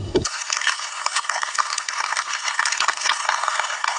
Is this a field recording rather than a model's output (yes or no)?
no